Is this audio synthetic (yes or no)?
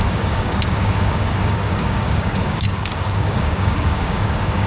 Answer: yes